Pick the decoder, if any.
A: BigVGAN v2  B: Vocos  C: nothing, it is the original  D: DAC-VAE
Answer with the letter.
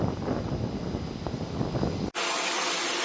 C